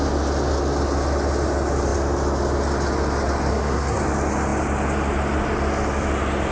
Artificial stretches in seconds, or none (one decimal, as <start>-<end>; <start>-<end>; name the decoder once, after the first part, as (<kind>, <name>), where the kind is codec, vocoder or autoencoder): 3.5-4.0 (codec, SNAC)